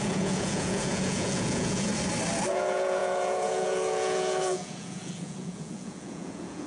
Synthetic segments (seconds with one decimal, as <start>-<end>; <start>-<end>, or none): 0.0-1.9; 2.5-6.7

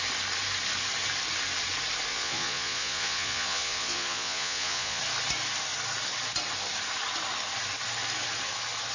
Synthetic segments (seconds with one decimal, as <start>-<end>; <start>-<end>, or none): 2.1-5.0